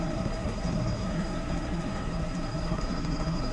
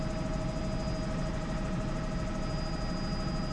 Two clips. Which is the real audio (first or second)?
second